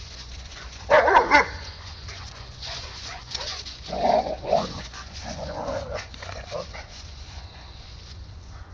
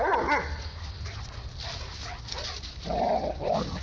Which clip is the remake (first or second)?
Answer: first